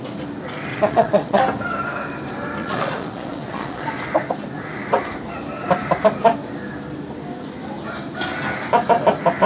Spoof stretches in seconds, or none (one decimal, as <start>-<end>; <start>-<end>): 0.7-1.4; 2.6-3.9